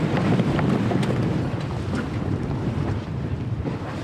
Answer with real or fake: real